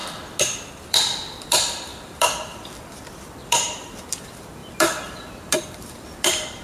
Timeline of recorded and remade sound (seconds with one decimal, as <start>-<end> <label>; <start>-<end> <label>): 0.0-0.7 recorded; 0.7-6.6 remade